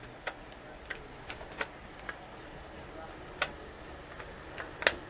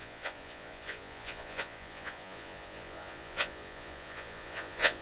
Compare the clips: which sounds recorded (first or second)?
first